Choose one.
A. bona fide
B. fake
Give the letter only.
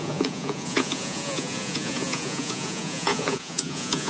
B